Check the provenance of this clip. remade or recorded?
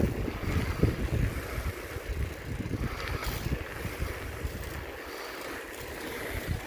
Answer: recorded